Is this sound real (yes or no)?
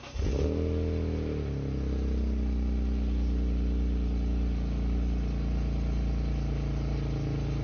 yes